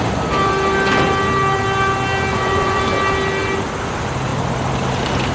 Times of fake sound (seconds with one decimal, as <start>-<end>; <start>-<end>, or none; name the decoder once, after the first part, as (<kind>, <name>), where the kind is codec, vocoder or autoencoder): 2.3-2.8 (vocoder, Vocos)